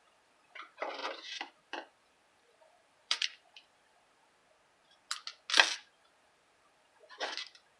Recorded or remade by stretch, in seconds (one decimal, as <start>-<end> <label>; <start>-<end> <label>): 0.0-4.4 remade; 4.4-6.0 recorded; 6.0-7.8 remade

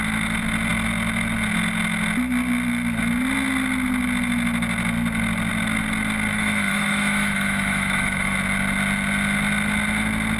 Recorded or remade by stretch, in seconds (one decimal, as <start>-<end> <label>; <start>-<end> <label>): 0.0-6.3 recorded; 6.3-8.4 remade; 8.4-10.4 recorded

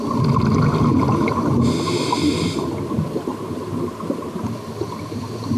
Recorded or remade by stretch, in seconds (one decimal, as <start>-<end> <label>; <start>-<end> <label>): 0.0-0.9 recorded; 0.9-4.3 remade; 4.3-5.6 recorded

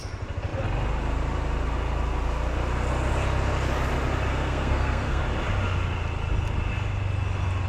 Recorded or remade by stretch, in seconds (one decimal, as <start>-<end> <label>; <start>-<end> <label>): 0.0-4.3 recorded; 4.3-5.2 remade; 5.2-7.7 recorded

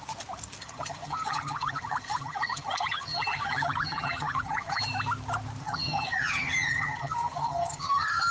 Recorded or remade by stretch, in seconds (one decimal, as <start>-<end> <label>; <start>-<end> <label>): 0.0-0.6 recorded; 0.6-4.8 remade; 4.8-5.6 recorded; 5.6-8.3 remade

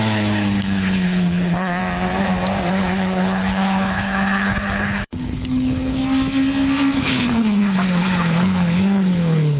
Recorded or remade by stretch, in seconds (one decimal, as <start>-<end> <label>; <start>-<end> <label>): 0.0-1.8 remade; 1.8-2.7 recorded; 2.7-6.0 remade; 6.0-7.0 recorded; 7.0-9.6 remade

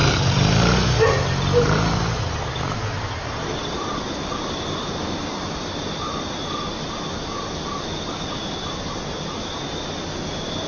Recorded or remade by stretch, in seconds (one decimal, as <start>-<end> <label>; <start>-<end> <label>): 0.0-10.7 recorded